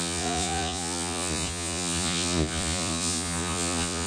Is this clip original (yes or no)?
no